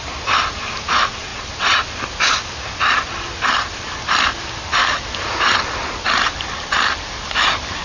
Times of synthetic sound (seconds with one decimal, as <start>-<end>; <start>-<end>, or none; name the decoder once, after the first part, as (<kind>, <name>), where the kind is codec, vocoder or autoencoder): 4.8-7.8 (vocoder, BigVGAN v2)